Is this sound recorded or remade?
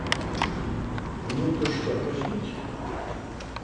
recorded